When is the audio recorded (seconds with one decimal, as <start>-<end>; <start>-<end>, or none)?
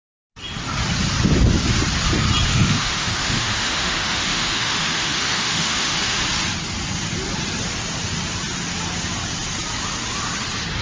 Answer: 0.0-2.5; 6.2-10.8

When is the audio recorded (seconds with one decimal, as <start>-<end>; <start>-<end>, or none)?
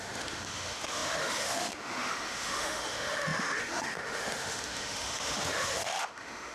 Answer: none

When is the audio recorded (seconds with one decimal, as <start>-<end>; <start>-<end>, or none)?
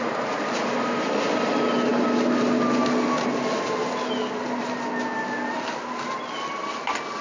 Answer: 0.0-7.2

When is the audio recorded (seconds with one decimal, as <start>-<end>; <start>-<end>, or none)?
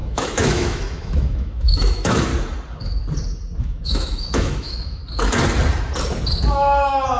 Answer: 2.3-3.6; 5.0-6.5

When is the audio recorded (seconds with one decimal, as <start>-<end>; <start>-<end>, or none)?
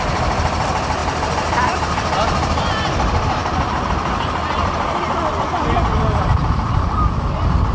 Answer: 0.0-7.7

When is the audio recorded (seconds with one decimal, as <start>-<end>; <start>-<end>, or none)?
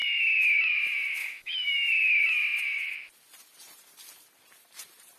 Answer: 0.0-1.2; 1.9-5.2